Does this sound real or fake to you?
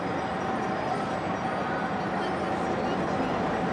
real